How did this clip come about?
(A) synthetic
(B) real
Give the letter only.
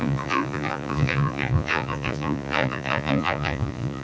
A